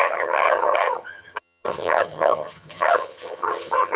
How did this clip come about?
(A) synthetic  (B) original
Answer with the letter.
A